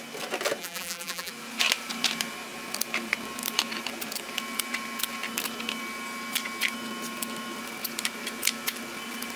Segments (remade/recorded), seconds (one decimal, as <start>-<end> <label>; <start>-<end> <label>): 0.0-0.6 recorded; 0.6-1.3 remade; 1.3-9.4 recorded